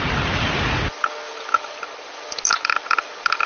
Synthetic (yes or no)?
no